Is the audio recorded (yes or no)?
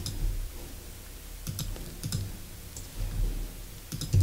yes